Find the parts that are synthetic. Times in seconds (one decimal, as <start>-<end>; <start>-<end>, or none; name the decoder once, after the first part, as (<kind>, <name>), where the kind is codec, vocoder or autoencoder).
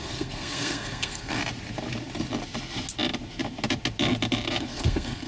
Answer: 0.0-1.4 (codec, SNAC); 4.6-5.3